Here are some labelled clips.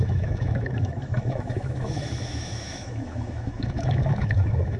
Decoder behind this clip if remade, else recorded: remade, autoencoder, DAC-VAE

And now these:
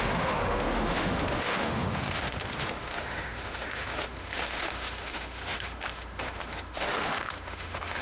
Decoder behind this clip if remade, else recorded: remade, autoencoder, DAC-VAE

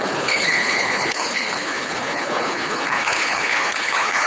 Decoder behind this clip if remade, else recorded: remade, codec, HILCodec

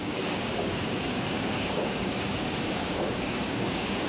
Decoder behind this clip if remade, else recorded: remade, codec, DAC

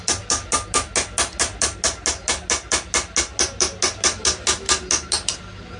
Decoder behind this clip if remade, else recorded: recorded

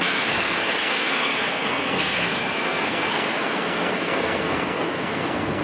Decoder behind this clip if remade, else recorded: remade, codec, SNAC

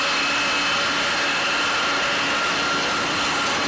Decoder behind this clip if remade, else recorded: recorded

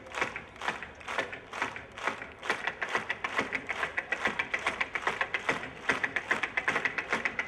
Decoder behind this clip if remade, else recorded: remade, vocoder, BigVGAN v2